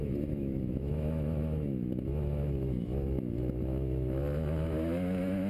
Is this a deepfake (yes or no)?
yes